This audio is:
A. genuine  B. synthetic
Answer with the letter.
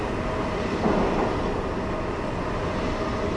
A